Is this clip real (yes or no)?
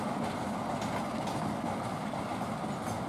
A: yes